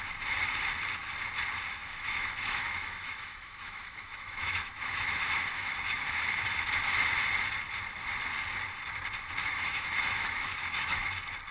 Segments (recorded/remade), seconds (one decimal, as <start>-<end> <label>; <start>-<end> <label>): 0.0-1.8 recorded; 1.8-6.6 remade; 6.6-9.4 recorded; 9.4-11.1 remade; 11.1-11.5 recorded